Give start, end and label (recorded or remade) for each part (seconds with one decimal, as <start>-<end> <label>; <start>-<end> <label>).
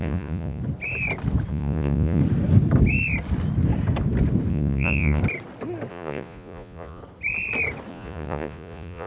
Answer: 0.0-0.6 remade; 0.6-1.5 recorded; 1.5-2.2 remade; 2.2-4.5 recorded; 4.5-5.2 remade; 5.2-5.9 recorded; 5.9-7.0 remade; 7.0-7.9 recorded; 7.9-9.1 remade